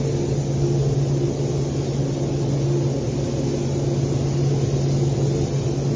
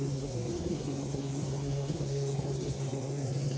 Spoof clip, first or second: second